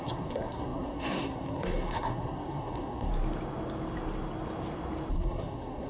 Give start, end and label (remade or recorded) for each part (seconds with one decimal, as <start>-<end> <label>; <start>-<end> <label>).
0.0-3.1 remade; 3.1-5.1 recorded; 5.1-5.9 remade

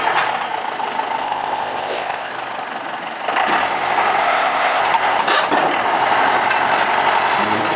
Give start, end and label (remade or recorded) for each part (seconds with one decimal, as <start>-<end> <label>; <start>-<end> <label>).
0.0-1.2 recorded; 1.2-2.3 remade; 2.3-4.2 recorded; 4.2-4.8 remade; 4.8-7.8 recorded

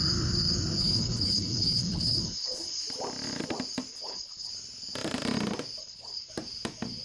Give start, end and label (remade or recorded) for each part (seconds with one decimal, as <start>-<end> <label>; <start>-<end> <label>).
0.0-0.8 recorded; 0.8-2.8 remade; 2.8-3.9 recorded; 3.9-4.5 remade; 4.5-5.8 recorded; 5.8-6.3 remade; 6.3-7.0 recorded